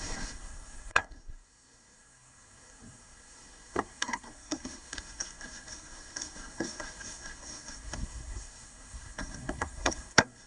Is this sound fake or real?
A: fake